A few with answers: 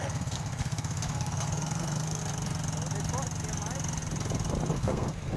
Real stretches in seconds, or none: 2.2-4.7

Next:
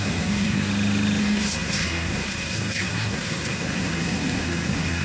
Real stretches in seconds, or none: 0.7-1.2

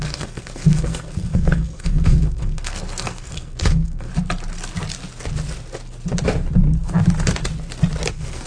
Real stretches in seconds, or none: 4.1-8.1

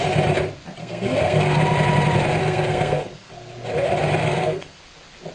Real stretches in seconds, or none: 0.0-0.8; 1.6-2.4; 3.3-4.2; 4.8-5.3

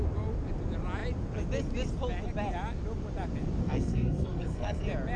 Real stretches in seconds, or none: 0.0-3.6; 4.8-5.2